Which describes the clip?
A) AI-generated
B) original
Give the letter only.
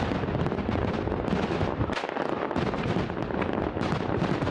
B